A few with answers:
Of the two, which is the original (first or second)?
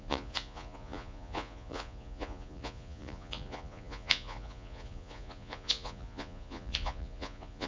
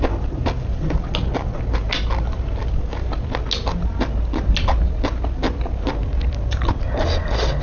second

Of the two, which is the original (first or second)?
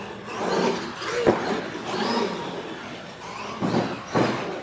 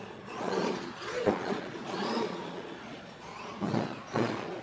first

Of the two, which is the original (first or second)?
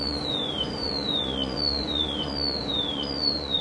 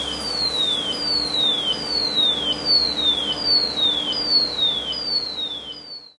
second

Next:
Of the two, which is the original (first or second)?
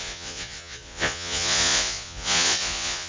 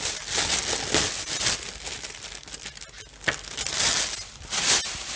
second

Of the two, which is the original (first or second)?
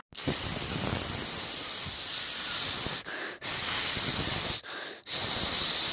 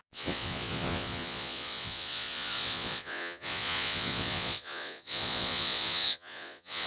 first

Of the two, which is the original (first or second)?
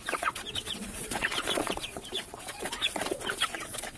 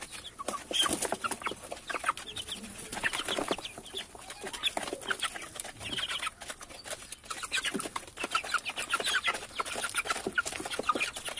second